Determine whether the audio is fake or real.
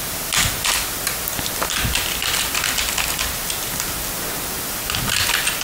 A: real